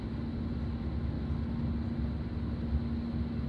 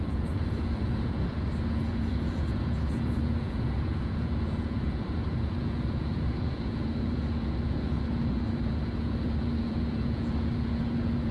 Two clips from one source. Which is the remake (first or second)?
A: second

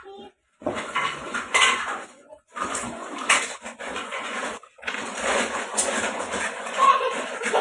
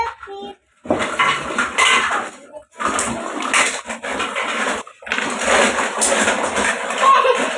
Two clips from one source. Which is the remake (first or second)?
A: first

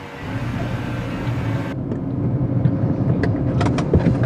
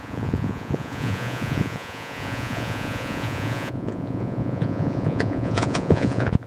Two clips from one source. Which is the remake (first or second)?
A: second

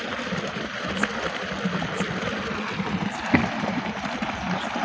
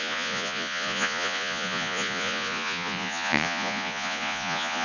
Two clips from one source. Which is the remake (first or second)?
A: second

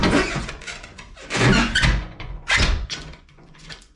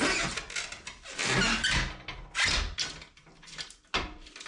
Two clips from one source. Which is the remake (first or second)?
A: first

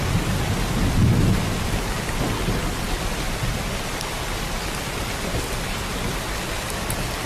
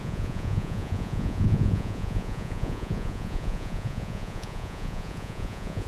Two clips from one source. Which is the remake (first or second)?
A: second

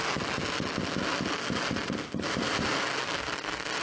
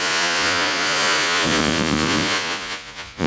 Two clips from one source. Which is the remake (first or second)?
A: second